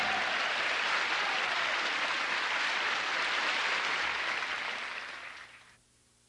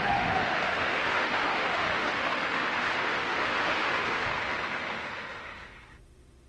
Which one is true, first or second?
first